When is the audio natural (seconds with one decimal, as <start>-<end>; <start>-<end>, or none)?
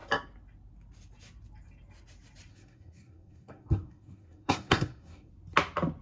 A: 0.0-2.5; 5.3-6.0